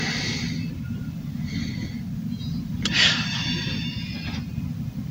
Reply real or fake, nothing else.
real